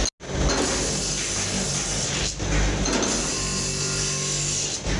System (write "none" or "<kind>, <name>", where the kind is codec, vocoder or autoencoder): none